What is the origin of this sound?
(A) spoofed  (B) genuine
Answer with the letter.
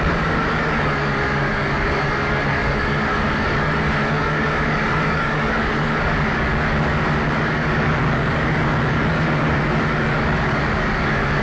A